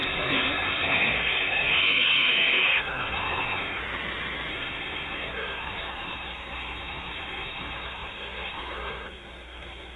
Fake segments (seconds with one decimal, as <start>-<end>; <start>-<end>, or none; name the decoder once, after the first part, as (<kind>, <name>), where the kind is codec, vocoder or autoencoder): 0.0-3.8 (codec, SNAC); 4.5-10.0